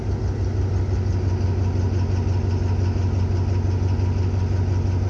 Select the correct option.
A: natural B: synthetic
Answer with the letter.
A